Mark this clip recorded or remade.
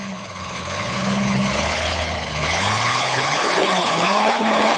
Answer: remade